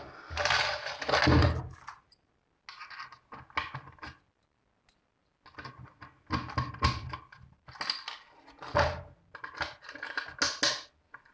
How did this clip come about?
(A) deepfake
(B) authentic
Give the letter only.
B